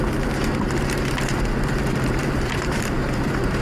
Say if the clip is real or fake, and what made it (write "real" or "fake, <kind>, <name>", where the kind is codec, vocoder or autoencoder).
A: fake, vocoder, BigVGAN v2